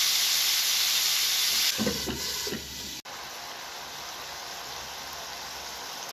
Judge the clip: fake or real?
real